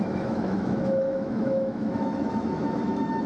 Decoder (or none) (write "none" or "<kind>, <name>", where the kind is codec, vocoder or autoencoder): autoencoder, DAC-VAE